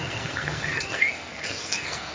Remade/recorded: remade